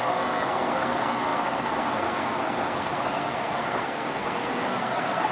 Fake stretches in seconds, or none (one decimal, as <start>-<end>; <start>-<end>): 0.0-5.3